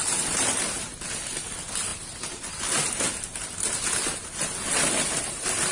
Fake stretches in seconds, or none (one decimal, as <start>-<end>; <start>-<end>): none